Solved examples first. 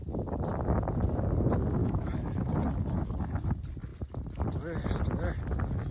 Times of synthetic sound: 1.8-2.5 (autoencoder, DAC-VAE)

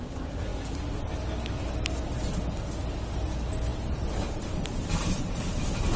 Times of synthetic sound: 3.7-5.4 (vocoder, BigVGAN v2)

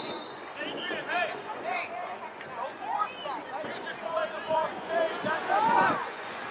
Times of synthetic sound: 0.0-6.5 (vocoder, Vocos)